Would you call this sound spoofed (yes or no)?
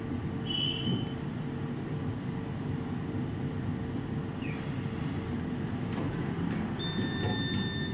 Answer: no